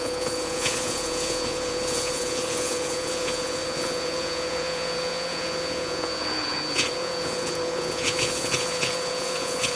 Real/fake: fake